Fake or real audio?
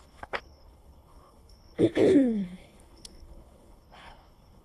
fake